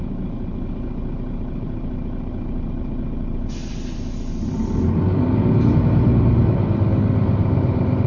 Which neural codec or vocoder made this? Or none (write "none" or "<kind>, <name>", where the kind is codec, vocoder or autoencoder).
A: none